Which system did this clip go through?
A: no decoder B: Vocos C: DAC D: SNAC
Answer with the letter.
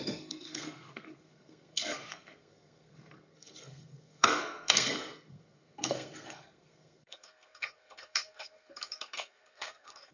D